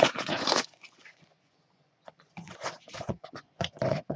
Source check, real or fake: fake